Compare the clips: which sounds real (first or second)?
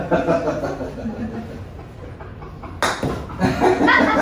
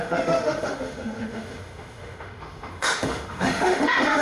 first